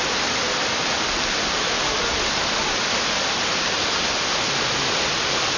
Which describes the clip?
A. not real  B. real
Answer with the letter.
B